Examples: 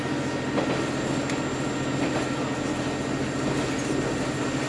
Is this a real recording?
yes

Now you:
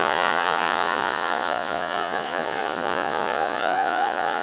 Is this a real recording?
no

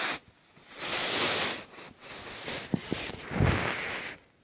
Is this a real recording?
yes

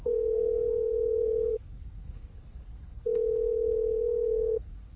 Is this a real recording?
no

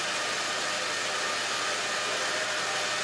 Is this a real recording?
yes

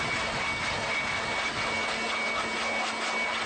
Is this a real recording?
yes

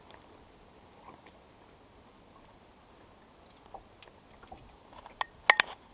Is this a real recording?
yes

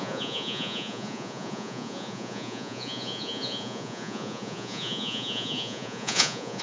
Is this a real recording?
no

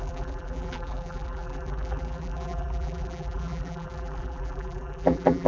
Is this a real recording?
no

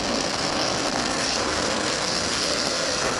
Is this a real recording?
no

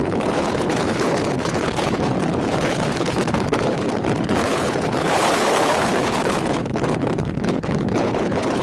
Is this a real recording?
no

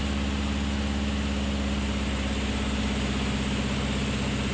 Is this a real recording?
yes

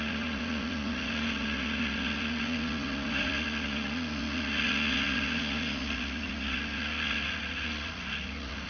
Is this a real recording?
no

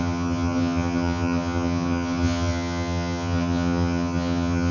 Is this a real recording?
no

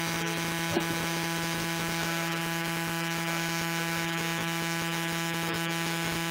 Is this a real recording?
no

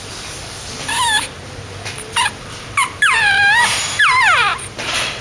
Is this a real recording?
no